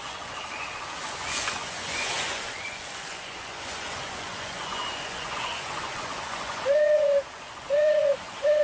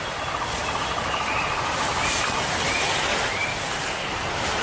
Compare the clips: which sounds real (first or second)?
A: second